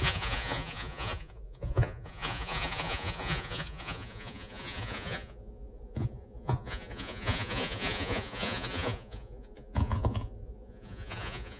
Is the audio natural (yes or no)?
no